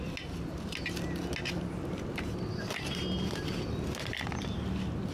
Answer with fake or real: real